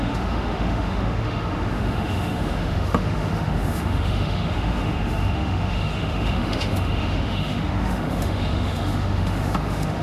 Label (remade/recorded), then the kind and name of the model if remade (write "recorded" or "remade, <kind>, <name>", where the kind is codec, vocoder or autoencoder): remade, autoencoder, DAC-VAE